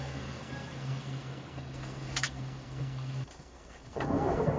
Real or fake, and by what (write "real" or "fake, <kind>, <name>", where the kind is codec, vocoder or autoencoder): fake, codec, SNAC